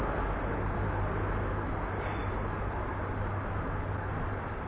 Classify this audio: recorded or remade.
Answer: recorded